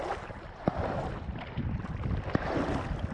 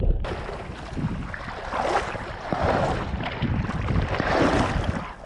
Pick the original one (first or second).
second